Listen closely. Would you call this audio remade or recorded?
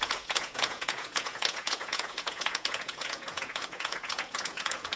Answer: remade